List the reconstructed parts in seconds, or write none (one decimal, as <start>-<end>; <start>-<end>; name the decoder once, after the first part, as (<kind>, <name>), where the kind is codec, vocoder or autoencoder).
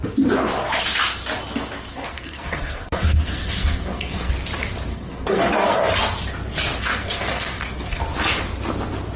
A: 1.9-4.3 (codec, SNAC); 4.9-5.9; 6.8-8.1